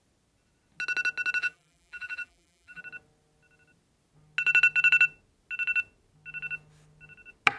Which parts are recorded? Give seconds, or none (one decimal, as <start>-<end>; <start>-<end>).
0.0-1.4; 2.8-7.6